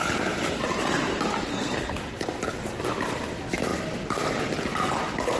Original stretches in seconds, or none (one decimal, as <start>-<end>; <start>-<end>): 0.0-1.5; 2.0-5.4